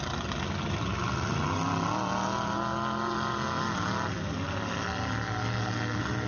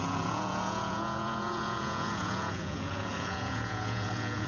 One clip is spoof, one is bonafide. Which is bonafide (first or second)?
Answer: first